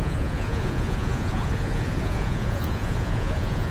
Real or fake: fake